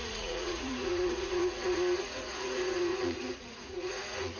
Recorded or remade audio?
remade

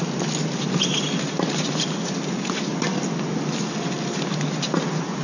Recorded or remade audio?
recorded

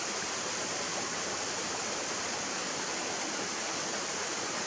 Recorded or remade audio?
recorded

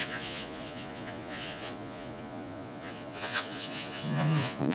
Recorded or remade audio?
remade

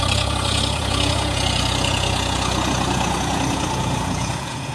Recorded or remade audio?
remade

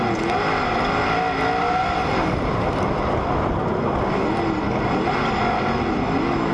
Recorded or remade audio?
recorded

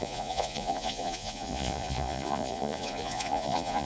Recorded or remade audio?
remade